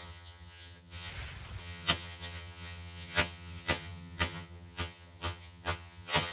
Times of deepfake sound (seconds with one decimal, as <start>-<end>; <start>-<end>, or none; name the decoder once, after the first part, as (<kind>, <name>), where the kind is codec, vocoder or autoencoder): 0.0-1.1 (vocoder, HiFi-GAN); 1.6-6.3